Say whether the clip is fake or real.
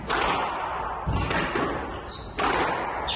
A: real